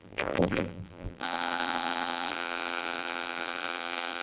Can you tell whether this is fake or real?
fake